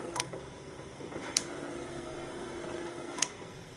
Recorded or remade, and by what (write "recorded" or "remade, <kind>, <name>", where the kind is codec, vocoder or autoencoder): remade, codec, SNAC